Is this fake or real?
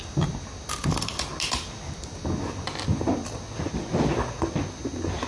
real